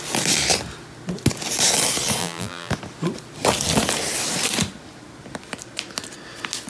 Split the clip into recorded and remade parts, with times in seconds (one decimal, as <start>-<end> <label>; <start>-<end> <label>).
0.0-2.2 recorded; 2.2-2.7 remade; 2.7-6.7 recorded